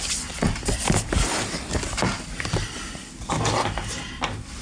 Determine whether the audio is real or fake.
real